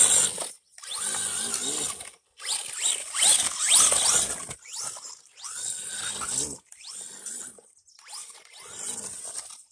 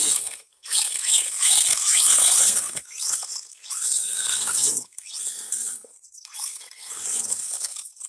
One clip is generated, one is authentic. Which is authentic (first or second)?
first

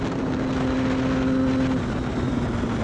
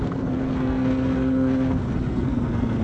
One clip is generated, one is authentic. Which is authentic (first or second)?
first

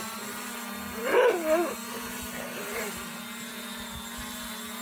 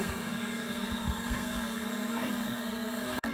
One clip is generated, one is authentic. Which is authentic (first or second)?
first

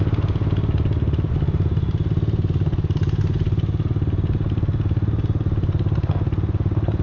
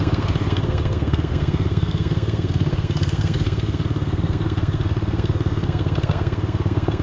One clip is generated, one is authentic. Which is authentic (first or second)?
first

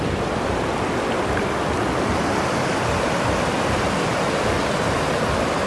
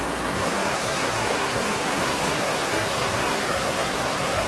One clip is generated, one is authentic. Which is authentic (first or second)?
first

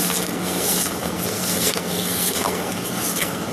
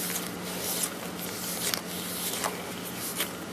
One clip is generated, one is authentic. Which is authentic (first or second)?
second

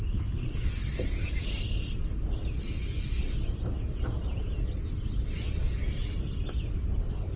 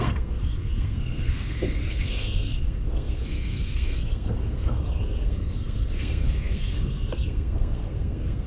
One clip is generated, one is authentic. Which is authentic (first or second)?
first